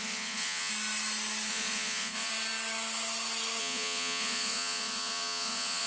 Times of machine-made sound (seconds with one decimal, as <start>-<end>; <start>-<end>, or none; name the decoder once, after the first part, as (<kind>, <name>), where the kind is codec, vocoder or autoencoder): 0.0-0.7 (vocoder, Vocos); 1.5-2.3; 3.6-5.9